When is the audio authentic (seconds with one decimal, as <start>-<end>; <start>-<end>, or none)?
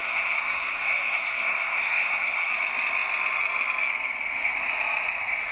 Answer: 2.5-5.5